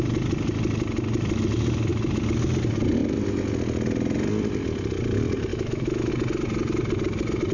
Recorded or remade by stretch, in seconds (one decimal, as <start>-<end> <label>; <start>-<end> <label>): 0.0-5.5 recorded; 5.5-6.1 remade; 6.1-7.5 recorded